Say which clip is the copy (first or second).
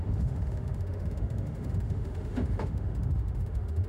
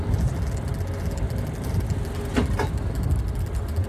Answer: first